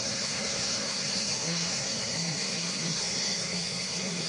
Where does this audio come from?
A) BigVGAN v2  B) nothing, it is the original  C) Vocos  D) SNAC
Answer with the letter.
D